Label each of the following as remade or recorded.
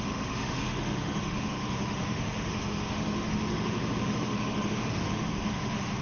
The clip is remade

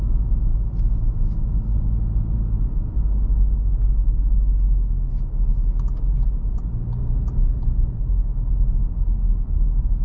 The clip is recorded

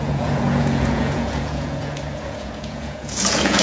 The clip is remade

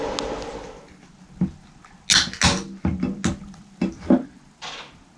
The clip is recorded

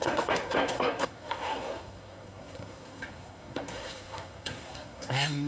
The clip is remade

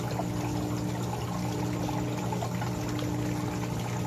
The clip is recorded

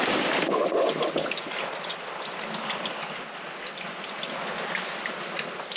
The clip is recorded